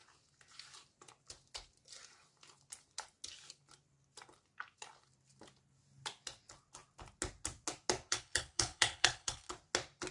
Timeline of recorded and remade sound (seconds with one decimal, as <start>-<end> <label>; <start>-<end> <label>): 0.0-8.1 recorded; 8.1-9.5 remade; 9.5-10.1 recorded